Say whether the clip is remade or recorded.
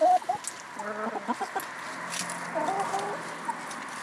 recorded